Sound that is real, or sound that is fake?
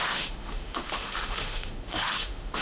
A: fake